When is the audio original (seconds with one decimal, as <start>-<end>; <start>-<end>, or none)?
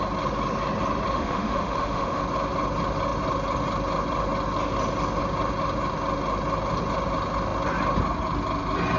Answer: 0.0-1.1; 2.2-9.0